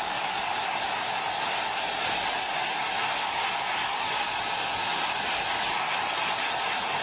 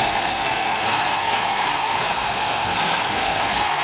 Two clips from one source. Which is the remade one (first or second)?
second